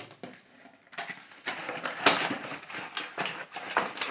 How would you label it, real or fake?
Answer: real